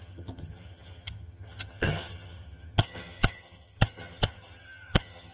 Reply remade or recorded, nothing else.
remade